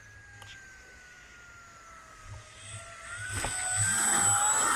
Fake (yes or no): no